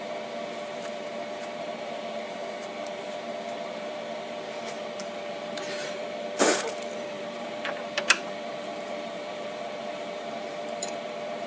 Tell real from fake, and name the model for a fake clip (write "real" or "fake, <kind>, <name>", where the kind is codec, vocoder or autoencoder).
fake, vocoder, BigVGAN v2